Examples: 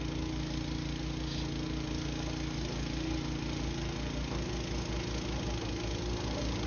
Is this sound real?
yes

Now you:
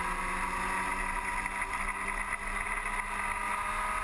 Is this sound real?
yes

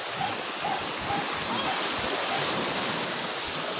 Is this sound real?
yes